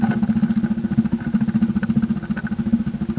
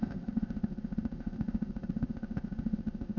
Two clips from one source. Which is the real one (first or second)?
first